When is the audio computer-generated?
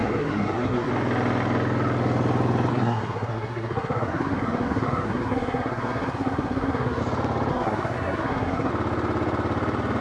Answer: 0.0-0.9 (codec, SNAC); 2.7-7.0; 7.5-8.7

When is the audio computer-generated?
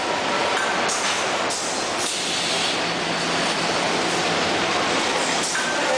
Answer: none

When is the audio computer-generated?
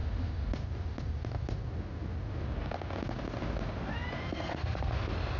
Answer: 4.3-4.9 (codec, SNAC)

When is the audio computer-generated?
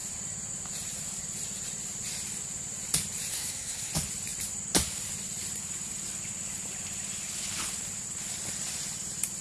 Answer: 3.3-3.9 (codec, SNAC)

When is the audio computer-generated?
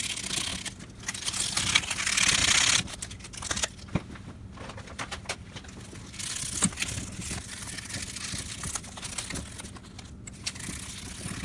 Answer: none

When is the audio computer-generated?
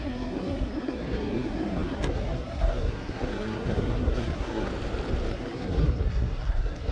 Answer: 0.0-4.7 (codec, SNAC); 5.3-6.9